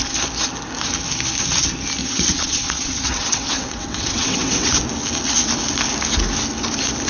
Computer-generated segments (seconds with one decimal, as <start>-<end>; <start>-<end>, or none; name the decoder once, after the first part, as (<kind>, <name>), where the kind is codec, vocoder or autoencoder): 2.0-4.8 (vocoder, WaveNeXt)

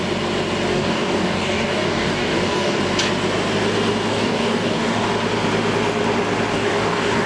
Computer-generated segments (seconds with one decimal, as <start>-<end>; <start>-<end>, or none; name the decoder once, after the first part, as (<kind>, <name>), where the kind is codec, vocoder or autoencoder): 0.7-2.8 (codec, DAC); 4.1-5.1; 6.5-7.3

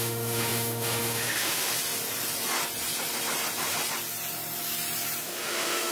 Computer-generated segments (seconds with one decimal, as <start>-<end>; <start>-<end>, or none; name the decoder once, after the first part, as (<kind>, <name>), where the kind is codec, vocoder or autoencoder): 0.0-1.7 (autoencoder, DAC-VAE); 5.2-5.9

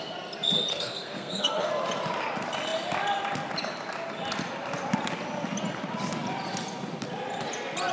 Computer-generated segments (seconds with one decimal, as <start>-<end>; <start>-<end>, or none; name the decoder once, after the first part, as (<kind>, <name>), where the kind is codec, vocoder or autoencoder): 0.7-1.7 (codec, SNAC)

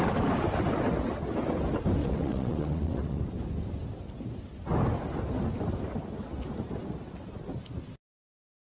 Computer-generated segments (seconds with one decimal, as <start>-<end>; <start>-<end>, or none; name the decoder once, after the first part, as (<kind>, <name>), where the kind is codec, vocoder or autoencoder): 2.0-3.2 (vocoder, WaveNeXt)

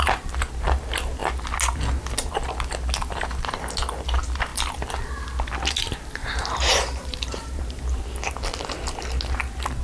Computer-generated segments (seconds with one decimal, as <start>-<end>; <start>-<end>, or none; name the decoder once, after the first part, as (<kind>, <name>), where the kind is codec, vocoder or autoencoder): 6.2-7.8 (vocoder, BigVGAN v2)